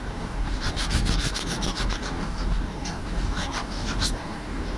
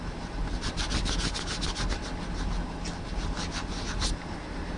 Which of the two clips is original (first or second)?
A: second